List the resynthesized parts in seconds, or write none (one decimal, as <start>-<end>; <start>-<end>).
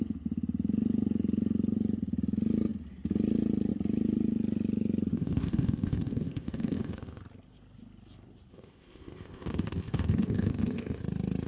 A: 5.1-7.2; 8.5-11.0